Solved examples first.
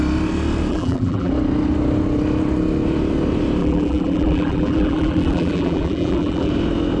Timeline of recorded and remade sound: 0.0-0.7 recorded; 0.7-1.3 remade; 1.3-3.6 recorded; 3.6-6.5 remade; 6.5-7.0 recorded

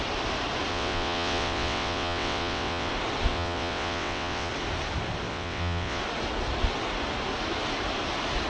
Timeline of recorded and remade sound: 0.0-0.7 recorded; 0.7-2.9 remade; 2.9-3.3 recorded; 3.3-4.5 remade; 4.5-5.3 recorded; 5.3-6.0 remade; 6.0-8.5 recorded

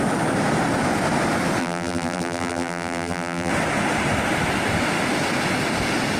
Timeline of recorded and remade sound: 0.0-1.6 recorded; 1.6-3.5 remade; 3.5-6.2 recorded

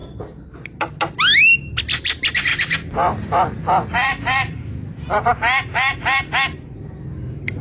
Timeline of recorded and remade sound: 0.0-7.6 recorded

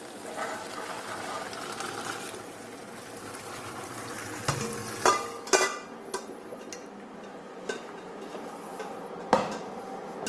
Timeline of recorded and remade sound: 0.0-10.3 recorded